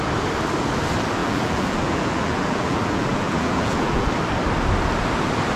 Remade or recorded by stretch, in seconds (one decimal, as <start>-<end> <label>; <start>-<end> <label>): 0.0-1.2 recorded; 1.2-4.1 remade; 4.1-5.6 recorded

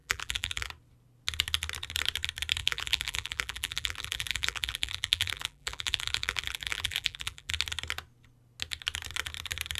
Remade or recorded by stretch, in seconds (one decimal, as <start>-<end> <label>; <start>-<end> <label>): 0.0-0.7 remade; 0.7-2.6 recorded; 2.6-7.5 remade; 7.5-9.8 recorded

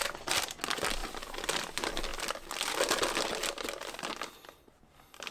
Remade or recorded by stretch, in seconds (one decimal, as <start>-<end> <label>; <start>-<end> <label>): 0.0-1.0 recorded; 1.0-1.6 remade; 1.6-5.3 recorded

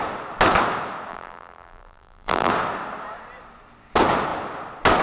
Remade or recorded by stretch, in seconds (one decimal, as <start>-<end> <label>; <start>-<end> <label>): 0.0-1.1 recorded; 1.1-2.5 remade; 2.5-5.0 recorded